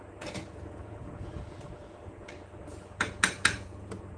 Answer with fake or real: fake